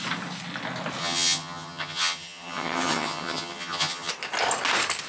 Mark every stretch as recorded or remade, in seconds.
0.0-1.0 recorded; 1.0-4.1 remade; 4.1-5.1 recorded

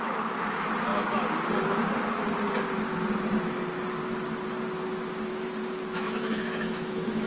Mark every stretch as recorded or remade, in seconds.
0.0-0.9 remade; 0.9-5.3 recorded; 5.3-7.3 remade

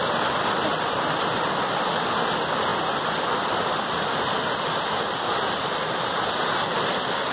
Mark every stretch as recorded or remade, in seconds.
0.0-7.3 recorded

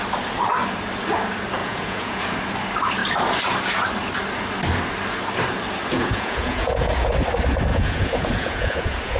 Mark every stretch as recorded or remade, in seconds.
0.0-1.6 recorded; 1.6-2.2 remade; 2.2-5.9 recorded; 5.9-7.1 remade; 7.1-7.7 recorded; 7.7-9.2 remade

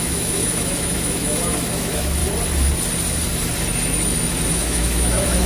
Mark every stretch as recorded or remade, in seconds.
0.0-2.2 remade; 2.2-4.5 recorded; 4.5-5.5 remade